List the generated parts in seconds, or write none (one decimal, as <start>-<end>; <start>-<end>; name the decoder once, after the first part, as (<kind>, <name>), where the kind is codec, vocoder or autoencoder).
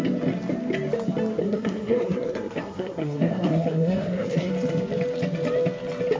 1.4-4.5 (codec, SNAC)